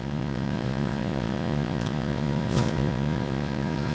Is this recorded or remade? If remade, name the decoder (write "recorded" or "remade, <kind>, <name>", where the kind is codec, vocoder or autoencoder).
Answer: remade, vocoder, Vocos